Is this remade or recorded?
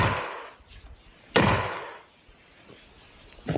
recorded